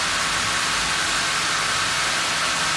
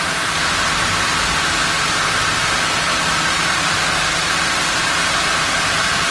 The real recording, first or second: first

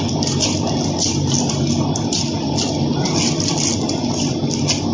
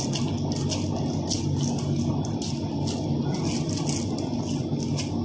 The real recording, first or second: second